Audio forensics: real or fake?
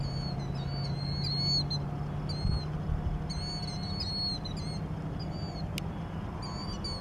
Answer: real